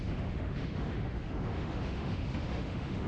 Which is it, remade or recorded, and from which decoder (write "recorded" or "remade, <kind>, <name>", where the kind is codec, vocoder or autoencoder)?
remade, autoencoder, DAC-VAE